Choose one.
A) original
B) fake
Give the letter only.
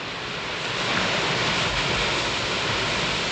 A